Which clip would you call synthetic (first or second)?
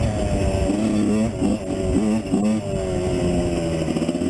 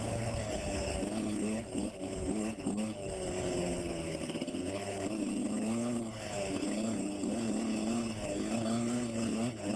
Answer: second